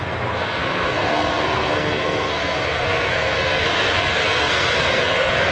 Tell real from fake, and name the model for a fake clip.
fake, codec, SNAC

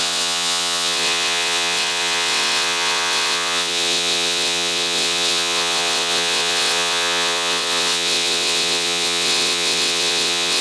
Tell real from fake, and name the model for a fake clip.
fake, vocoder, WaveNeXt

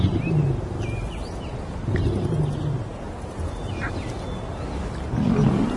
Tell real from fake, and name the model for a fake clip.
real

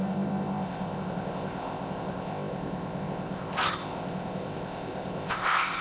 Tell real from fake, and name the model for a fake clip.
fake, codec, ZipCodec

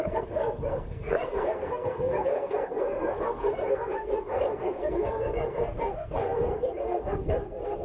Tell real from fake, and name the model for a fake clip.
fake, codec, SNAC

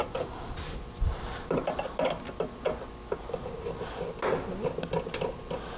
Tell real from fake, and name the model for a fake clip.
real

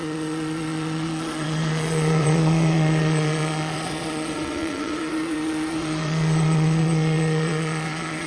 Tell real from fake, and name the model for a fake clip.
fake, vocoder, Vocos